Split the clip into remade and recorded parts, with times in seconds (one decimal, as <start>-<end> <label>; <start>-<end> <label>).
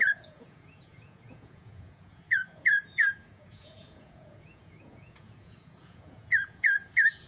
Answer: 0.0-7.3 remade